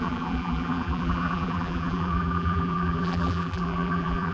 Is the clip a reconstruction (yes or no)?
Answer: yes